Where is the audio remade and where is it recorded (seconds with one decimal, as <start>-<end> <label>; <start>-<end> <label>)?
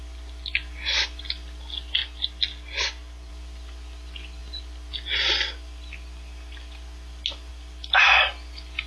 0.0-8.9 recorded